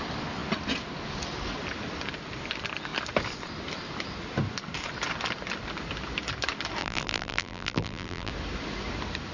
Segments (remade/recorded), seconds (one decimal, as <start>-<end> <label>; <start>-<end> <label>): 0.0-6.8 recorded; 6.8-8.3 remade; 8.3-9.3 recorded

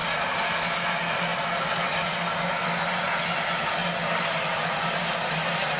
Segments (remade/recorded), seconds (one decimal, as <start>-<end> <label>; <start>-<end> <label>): 0.0-3.8 recorded; 3.8-5.0 remade; 5.0-5.8 recorded

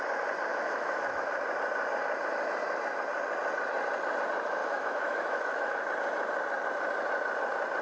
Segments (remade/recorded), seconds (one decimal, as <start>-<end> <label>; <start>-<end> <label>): 0.0-0.5 recorded; 0.5-1.3 remade; 1.3-4.6 recorded; 4.6-5.8 remade; 5.8-7.8 recorded

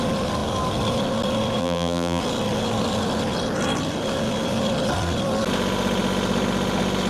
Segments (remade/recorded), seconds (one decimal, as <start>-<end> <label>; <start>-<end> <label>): 0.0-1.6 recorded; 1.6-2.2 remade; 2.2-7.1 recorded